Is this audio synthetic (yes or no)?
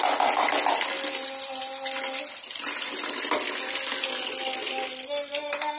no